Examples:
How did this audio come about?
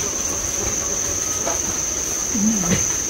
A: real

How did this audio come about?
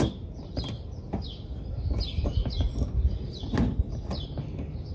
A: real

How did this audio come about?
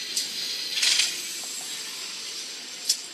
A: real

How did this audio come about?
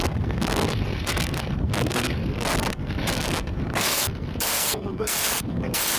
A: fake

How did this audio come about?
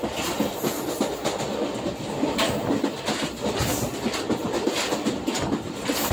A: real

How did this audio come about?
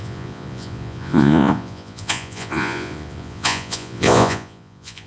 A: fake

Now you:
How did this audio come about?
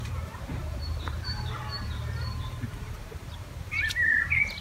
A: fake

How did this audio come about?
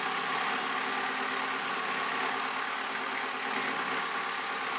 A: real